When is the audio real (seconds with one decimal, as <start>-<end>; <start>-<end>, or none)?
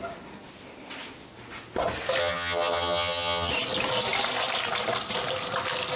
0.0-2.2; 3.5-6.0